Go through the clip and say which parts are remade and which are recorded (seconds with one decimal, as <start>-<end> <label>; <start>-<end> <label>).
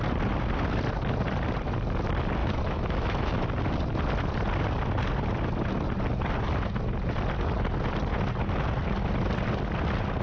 0.0-2.4 recorded; 2.4-3.4 remade; 3.4-10.2 recorded